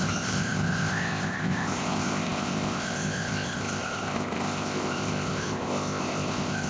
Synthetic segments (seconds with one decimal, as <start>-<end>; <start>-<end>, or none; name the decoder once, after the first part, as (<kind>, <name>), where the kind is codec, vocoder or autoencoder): 0.0-6.7 (codec, ZipCodec)